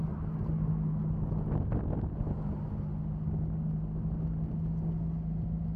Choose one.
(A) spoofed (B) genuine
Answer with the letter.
B